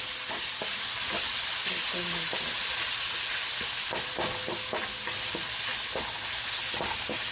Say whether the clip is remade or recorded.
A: recorded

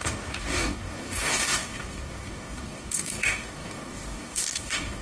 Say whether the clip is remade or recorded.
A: remade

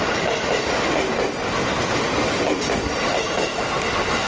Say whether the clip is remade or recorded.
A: recorded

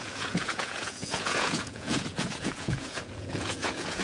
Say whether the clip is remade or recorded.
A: remade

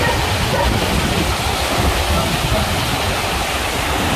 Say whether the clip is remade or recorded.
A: recorded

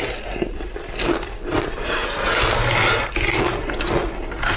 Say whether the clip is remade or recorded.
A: recorded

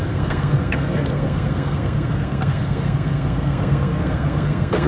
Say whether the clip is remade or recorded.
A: remade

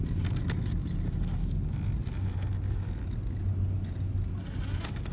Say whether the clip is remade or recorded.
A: recorded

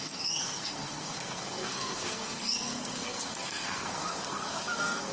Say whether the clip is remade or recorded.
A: remade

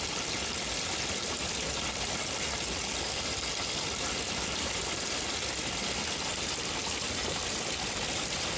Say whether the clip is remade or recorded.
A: recorded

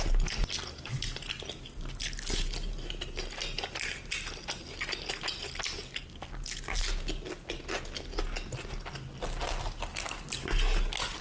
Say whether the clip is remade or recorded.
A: recorded